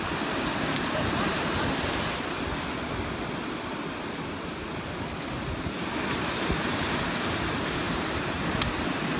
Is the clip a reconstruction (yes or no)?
no